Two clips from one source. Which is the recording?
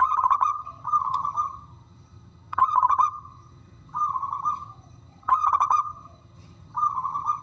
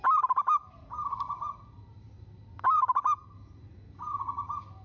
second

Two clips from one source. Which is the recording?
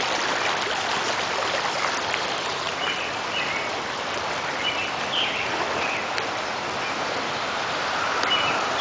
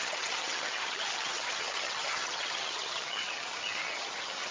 first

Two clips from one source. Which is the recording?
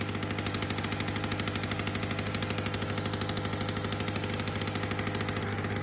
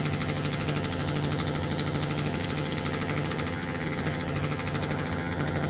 first